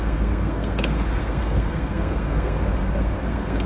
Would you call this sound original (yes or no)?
no